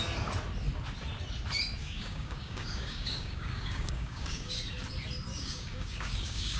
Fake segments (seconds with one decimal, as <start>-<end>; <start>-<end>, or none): 1.8-4.6; 5.3-6.6